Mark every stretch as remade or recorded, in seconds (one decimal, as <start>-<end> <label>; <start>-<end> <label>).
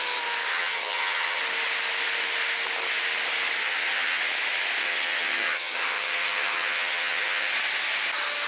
0.0-0.5 recorded; 0.5-1.4 remade; 1.4-3.6 recorded; 3.6-4.2 remade; 4.2-4.8 recorded; 4.8-7.5 remade; 7.5-8.5 recorded